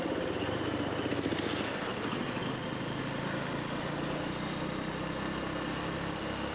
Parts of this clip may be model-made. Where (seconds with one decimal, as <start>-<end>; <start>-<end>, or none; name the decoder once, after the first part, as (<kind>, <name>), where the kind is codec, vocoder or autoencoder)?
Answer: none